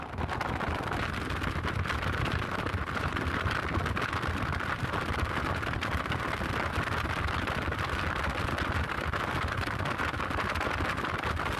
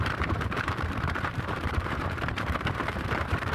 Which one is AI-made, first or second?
second